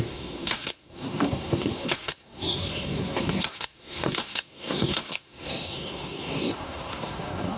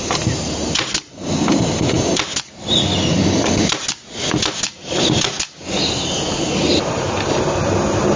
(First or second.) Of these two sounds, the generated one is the first